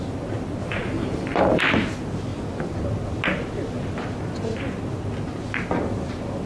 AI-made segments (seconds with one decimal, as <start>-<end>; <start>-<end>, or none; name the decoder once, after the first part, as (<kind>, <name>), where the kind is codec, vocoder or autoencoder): 0.6-1.6 (vocoder, BigVGAN v2)